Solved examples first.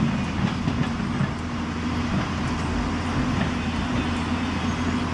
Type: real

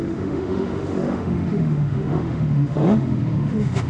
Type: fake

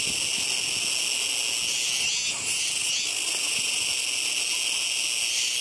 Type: real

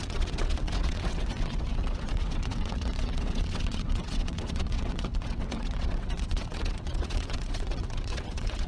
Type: fake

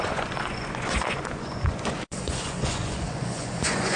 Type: fake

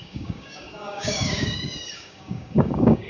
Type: fake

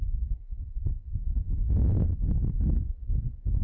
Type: fake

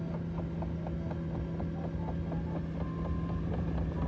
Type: real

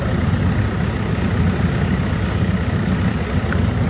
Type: real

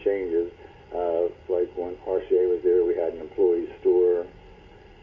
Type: real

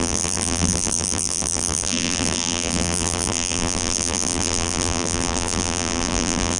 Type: fake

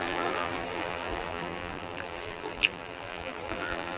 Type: fake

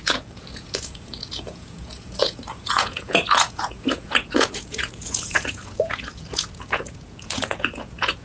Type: fake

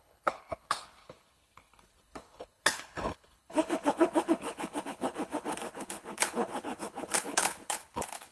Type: fake